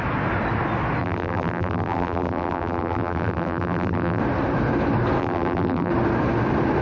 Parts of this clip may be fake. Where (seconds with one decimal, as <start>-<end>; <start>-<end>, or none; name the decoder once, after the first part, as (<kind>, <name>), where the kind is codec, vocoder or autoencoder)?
1.0-4.2 (vocoder, BigVGAN v2); 5.2-5.9

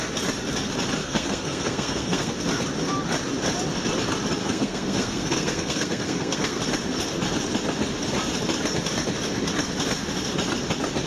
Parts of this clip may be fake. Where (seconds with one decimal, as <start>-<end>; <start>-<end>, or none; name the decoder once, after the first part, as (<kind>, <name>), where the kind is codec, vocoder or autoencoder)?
1.0-2.3 (codec, SNAC); 4.4-6.6

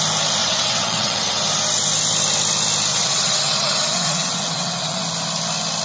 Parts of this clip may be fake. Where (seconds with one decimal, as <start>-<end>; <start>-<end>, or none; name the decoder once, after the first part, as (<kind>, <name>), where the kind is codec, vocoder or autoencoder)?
0.4-1.4 (vocoder, WaveNeXt); 2.9-5.0